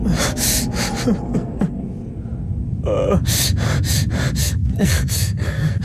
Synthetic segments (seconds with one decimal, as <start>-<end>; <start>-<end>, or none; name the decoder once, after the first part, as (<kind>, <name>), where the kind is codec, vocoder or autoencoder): 1.3-1.8 (codec, SNAC); 4.4-5.8